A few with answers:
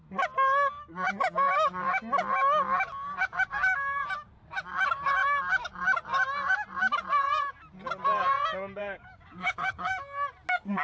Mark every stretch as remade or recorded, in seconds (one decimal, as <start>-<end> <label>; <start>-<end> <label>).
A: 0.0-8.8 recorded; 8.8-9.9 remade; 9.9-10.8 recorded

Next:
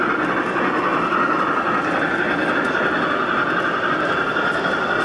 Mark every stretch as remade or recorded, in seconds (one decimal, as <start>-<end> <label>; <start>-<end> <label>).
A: 0.0-5.0 recorded

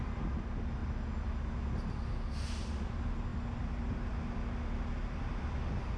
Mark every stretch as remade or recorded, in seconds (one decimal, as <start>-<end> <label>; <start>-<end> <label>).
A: 0.0-6.0 recorded

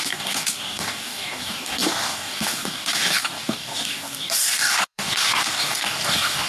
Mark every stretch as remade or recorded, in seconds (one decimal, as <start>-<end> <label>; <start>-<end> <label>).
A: 0.0-6.5 remade